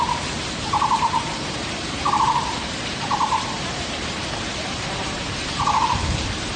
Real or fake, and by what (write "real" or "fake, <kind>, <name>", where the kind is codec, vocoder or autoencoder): fake, vocoder, BigVGAN v2